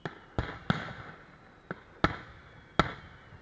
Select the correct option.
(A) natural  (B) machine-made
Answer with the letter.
A